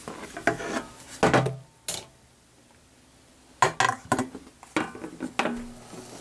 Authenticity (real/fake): real